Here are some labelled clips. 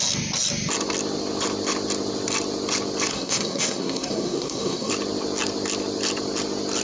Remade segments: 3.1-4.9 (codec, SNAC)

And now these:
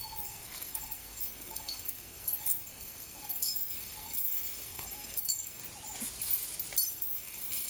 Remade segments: 0.0-5.6 (codec, SNAC); 6.9-7.7

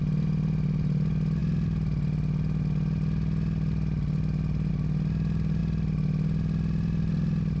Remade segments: none

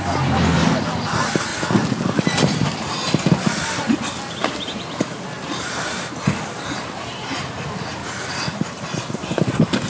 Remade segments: none

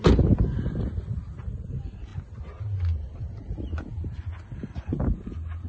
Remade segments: none